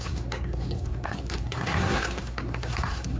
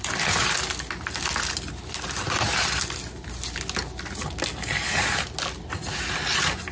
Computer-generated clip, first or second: first